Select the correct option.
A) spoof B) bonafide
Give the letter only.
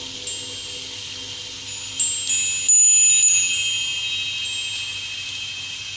B